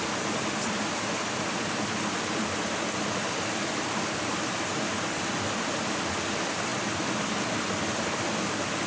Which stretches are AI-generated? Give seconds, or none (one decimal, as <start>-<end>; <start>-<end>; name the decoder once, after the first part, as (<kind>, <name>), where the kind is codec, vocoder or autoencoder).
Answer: none